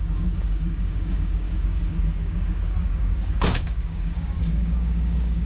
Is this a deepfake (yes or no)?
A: yes